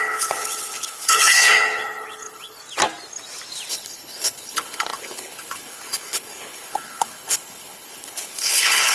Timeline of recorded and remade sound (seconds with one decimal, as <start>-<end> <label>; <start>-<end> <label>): 0.0-2.6 remade; 2.6-3.7 recorded; 3.7-8.9 remade